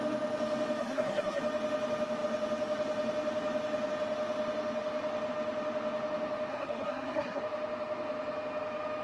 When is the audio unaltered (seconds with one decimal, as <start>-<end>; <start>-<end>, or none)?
0.0-0.8; 1.4-6.5; 7.4-9.0